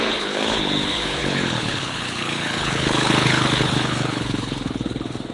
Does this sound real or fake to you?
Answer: fake